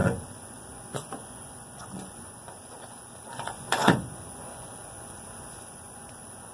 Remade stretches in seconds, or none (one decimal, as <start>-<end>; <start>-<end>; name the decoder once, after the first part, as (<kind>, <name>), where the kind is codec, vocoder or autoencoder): 0.0-6.5 (vocoder, Vocos)